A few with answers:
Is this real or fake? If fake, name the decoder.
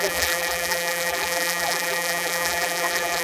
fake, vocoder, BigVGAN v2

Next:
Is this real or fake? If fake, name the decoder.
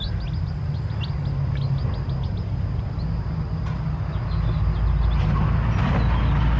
real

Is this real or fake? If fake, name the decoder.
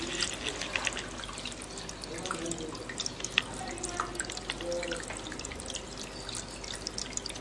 real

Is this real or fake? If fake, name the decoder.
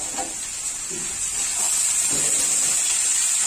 real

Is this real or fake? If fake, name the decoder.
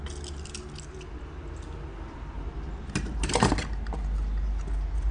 real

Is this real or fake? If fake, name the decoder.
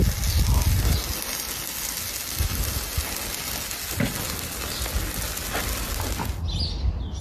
real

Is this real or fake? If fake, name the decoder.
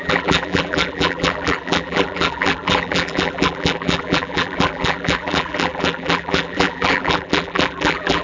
fake, vocoder, BigVGAN v2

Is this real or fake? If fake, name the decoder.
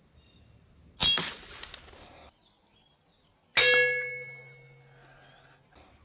real